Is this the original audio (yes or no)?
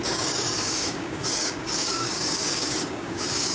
no